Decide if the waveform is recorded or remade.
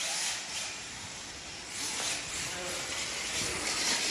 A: recorded